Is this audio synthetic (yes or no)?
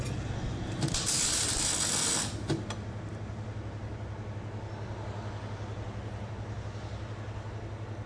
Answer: no